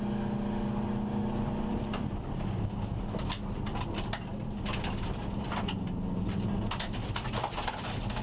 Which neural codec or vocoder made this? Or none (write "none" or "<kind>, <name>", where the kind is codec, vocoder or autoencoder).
none